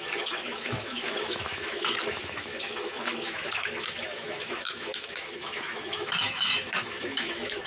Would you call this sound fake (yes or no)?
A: yes